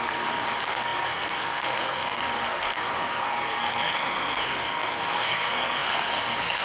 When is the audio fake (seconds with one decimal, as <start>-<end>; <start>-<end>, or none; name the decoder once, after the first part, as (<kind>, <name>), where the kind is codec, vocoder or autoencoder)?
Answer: 0.0-6.6 (codec, SNAC)